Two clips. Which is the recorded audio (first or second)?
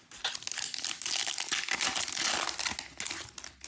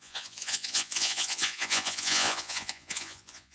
first